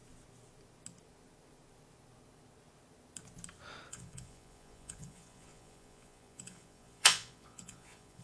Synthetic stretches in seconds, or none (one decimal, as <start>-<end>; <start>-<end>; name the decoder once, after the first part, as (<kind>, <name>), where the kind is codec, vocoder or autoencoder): 3.9-8.2 (vocoder, Vocos)